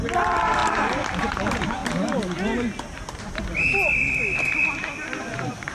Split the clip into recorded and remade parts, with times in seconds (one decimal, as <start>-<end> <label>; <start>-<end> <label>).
0.0-1.8 remade; 1.8-5.2 recorded; 5.2-5.7 remade